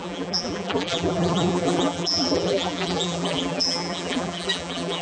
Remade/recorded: remade